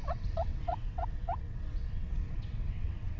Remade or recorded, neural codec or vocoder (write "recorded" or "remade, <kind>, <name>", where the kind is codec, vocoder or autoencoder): remade, vocoder, WaveNeXt